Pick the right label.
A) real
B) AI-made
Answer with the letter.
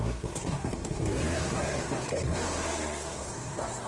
B